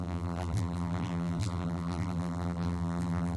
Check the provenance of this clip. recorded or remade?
remade